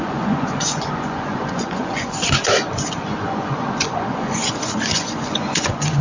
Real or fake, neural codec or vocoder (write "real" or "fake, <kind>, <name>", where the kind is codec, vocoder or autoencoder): fake, vocoder, Vocos